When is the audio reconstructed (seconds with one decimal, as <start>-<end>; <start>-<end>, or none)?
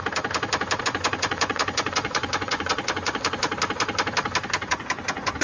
0.8-3.5; 4.7-5.4